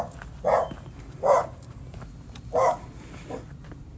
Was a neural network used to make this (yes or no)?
no